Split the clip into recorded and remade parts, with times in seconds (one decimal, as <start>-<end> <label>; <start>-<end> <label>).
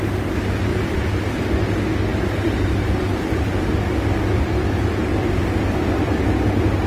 0.0-0.7 recorded; 0.7-1.7 remade; 1.7-2.1 recorded; 2.1-3.7 remade; 3.7-5.1 recorded; 5.1-6.2 remade; 6.2-6.9 recorded